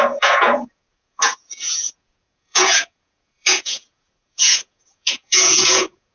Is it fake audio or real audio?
fake